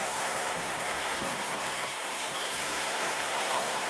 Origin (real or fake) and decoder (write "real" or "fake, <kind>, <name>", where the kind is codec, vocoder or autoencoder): fake, codec, SNAC